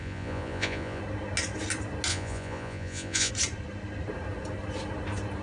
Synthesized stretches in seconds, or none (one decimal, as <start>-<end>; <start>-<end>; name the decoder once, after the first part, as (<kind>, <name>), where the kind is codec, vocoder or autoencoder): 0.0-1.0 (vocoder, Vocos); 2.1-3.3